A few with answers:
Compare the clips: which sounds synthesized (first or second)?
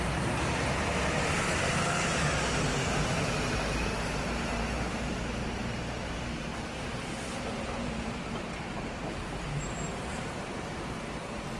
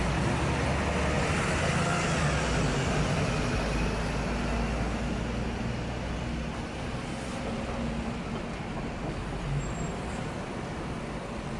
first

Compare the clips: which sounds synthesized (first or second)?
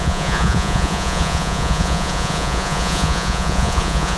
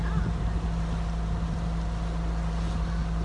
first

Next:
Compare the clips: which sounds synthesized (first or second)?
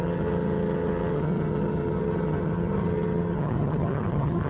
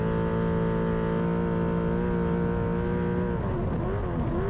first